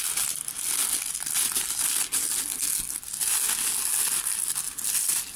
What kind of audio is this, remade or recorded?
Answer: recorded